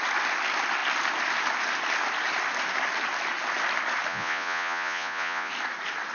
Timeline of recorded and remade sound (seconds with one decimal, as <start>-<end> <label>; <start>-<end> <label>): 0.0-4.1 recorded; 4.1-5.5 remade; 5.5-6.1 recorded

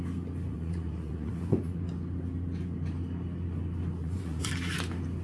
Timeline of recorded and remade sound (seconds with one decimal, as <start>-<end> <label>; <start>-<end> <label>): 0.0-0.5 recorded; 0.5-1.8 remade; 1.8-4.0 recorded; 4.0-4.5 remade; 4.5-5.2 recorded

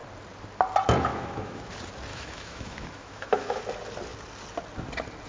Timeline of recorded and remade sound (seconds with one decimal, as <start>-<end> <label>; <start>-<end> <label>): 0.0-1.1 recorded; 1.1-1.7 remade; 1.7-2.1 recorded; 2.1-3.6 remade; 3.6-5.3 recorded

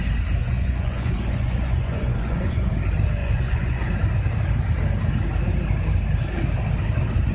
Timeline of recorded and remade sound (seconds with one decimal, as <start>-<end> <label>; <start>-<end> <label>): 0.0-0.4 recorded; 0.4-2.7 remade; 2.7-3.2 recorded; 3.2-3.8 remade; 3.8-7.3 recorded

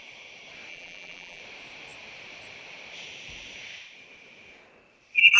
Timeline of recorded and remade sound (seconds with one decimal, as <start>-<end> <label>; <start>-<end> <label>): 0.0-0.7 recorded; 0.7-1.4 remade; 1.4-5.4 recorded

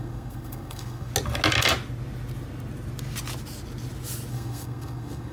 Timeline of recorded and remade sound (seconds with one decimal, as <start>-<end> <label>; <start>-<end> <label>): 0.0-1.1 remade; 1.1-4.3 recorded; 4.3-5.3 remade

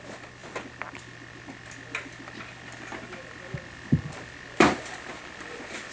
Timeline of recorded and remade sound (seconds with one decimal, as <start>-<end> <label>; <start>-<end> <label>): 0.0-5.9 recorded

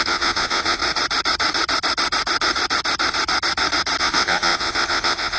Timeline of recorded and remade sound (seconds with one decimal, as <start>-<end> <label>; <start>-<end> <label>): 0.0-0.8 remade; 0.8-4.0 recorded; 4.0-5.4 remade